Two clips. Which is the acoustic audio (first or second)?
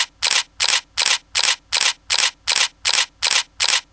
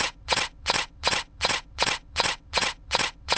first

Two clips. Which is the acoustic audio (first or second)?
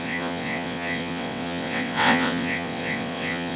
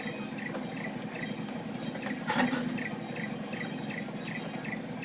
second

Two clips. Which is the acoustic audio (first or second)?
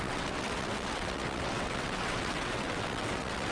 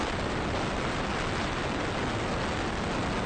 second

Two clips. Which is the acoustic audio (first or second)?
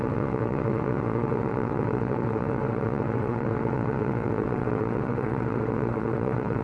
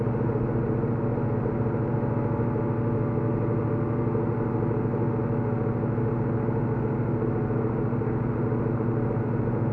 second